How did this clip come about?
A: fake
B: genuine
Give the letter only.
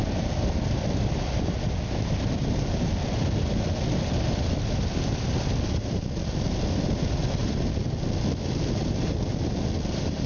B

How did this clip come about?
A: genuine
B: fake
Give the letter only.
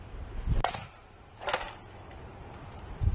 A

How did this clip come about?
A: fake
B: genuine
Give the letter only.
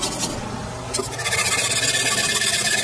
B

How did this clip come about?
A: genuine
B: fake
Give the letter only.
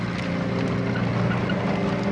A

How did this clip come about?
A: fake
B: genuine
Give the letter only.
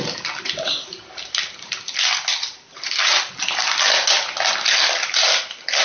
B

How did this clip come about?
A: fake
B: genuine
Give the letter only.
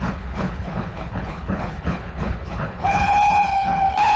A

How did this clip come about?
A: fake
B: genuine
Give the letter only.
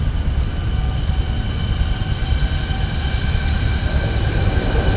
B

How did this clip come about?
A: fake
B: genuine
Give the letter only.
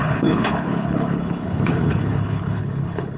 A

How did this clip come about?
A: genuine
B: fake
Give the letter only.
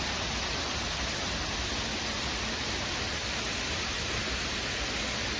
A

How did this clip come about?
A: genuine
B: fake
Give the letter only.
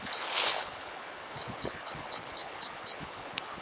B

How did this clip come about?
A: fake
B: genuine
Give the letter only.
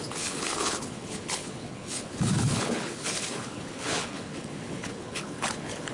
A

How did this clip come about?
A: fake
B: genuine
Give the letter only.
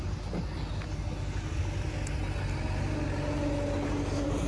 B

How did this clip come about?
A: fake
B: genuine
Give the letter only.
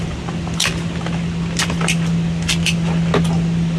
B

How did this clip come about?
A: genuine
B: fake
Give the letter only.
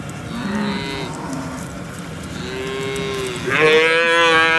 A